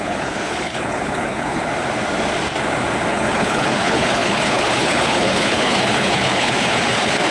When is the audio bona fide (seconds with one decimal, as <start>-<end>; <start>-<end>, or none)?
1.7-3.1

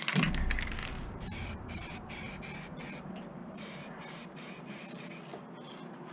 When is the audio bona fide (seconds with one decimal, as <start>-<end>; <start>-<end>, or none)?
0.0-0.8; 2.4-3.4; 4.8-6.1

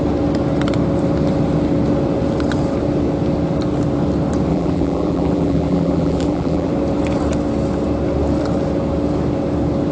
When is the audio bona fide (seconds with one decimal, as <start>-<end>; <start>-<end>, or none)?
0.0-4.5; 6.7-9.9

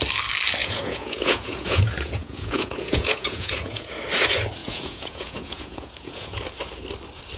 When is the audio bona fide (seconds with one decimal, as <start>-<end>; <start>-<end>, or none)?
0.0-0.6; 3.9-4.6; 6.4-7.4

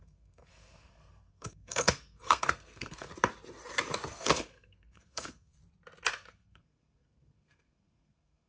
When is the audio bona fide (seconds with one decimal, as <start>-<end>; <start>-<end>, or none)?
3.1-4.1; 5.6-6.1

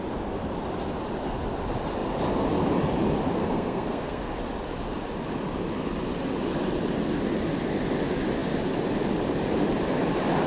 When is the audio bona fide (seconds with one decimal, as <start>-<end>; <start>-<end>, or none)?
0.0-3.4; 4.2-10.5